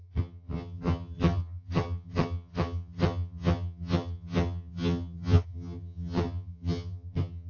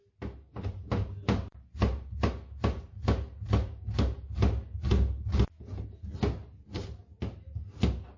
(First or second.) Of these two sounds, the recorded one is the second